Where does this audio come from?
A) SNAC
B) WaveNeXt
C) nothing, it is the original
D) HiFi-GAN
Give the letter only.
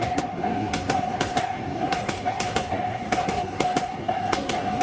A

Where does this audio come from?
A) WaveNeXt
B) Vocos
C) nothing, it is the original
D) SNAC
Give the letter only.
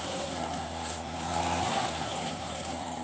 D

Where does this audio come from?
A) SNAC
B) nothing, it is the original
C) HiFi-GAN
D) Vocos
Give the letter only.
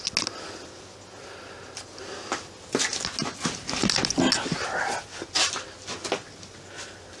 B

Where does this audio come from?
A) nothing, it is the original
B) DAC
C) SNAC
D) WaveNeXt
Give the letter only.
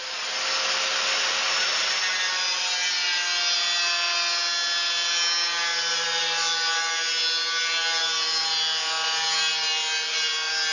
A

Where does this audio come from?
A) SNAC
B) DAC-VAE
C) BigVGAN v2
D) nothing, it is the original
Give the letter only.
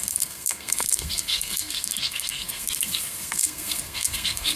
A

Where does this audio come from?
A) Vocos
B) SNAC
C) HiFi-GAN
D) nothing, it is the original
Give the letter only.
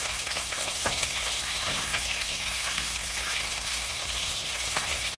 B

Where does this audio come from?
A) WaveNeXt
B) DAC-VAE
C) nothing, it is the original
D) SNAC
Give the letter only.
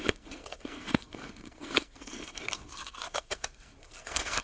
D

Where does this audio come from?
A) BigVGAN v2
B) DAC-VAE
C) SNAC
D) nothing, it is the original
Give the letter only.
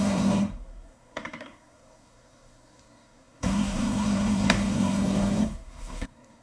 C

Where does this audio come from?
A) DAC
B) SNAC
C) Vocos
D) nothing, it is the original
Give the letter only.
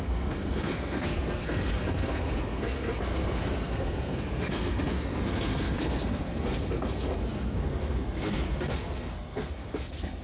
B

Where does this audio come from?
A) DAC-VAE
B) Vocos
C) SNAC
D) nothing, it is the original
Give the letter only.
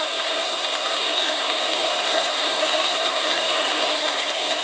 C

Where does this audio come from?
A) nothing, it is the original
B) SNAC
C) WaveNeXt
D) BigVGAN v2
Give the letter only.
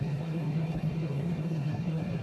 B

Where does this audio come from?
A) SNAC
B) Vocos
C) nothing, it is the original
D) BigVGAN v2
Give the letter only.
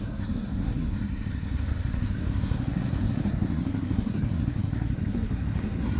A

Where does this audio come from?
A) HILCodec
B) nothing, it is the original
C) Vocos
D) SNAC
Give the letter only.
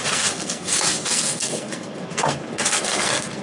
D